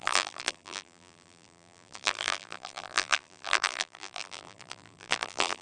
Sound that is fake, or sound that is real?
fake